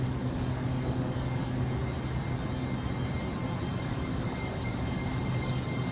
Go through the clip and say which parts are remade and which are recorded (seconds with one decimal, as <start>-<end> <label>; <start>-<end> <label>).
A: 0.0-1.4 remade; 1.4-3.8 recorded; 3.8-5.9 remade